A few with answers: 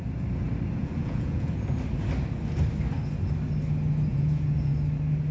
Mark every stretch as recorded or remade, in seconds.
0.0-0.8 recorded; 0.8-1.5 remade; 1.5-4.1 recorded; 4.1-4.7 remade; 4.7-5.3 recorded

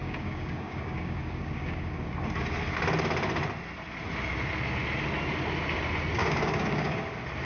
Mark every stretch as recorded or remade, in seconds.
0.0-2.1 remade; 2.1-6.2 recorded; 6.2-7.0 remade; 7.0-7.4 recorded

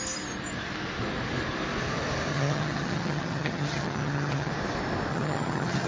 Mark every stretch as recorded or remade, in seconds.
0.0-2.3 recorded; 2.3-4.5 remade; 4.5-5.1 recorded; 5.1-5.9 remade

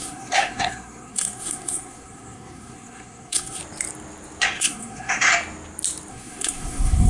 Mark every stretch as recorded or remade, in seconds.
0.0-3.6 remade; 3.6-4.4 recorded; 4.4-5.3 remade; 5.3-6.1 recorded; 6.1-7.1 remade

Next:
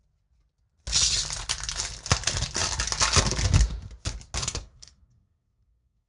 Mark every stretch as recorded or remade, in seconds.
0.0-4.4 recorded; 4.4-6.1 remade